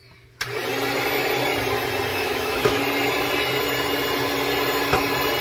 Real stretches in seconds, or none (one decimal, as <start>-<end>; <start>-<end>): 0.0-2.1; 2.8-5.4